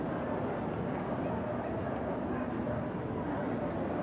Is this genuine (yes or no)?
yes